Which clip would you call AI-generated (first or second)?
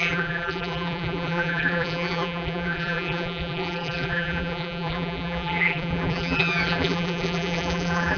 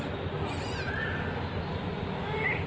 first